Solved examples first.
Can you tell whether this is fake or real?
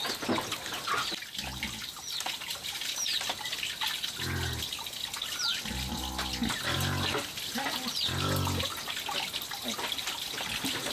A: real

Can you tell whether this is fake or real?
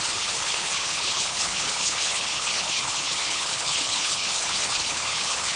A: fake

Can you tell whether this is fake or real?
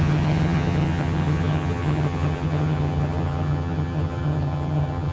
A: fake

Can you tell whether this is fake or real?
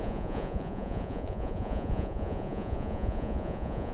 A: fake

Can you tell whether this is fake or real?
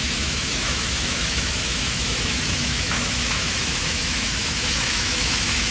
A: fake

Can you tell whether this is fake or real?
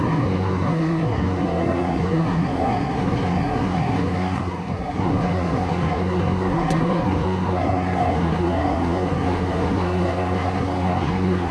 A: fake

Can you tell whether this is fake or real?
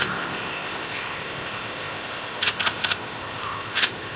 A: fake